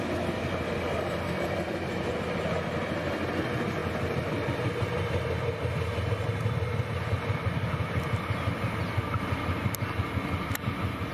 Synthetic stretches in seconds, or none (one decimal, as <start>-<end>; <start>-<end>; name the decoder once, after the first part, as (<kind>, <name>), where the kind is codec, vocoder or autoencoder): none